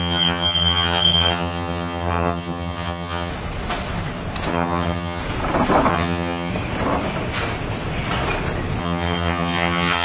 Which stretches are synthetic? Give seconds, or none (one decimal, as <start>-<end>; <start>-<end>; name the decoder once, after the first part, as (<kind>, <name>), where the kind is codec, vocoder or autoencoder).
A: 0.0-3.3 (vocoder, HiFi-GAN); 4.5-5.2; 5.9-6.5; 8.8-10.0